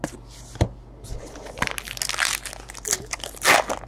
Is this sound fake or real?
real